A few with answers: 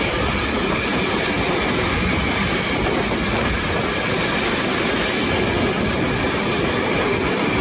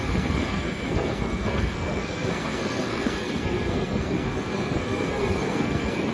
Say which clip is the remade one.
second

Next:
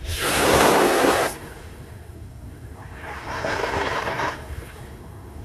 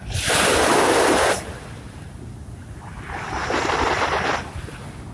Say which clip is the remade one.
first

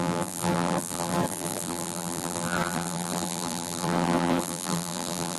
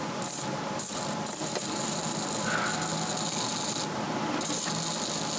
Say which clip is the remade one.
first